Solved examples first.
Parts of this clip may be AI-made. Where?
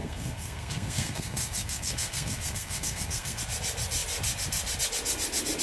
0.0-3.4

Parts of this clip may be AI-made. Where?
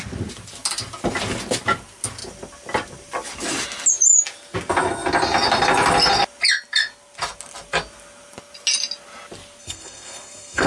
9.6-10.7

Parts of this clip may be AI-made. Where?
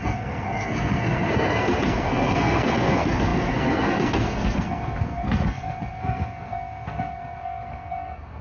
0.0-8.4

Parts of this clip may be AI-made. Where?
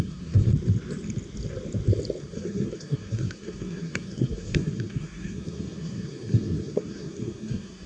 0.0-0.5; 2.2-7.9